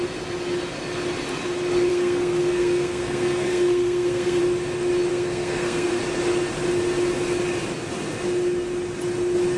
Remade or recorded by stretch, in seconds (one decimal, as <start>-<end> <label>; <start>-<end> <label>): 0.0-1.9 recorded; 1.9-4.4 remade; 4.4-5.1 recorded; 5.1-6.0 remade; 6.0-9.6 recorded